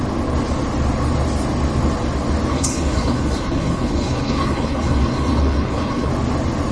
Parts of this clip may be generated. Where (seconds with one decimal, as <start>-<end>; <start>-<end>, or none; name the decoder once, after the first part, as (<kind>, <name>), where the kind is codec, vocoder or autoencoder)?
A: 2.5-6.1 (codec, HILCodec)